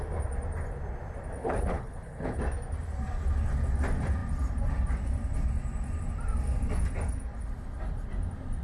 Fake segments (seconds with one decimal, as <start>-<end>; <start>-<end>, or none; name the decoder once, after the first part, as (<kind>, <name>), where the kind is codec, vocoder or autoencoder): 1.4-2.4 (codec, HILCodec)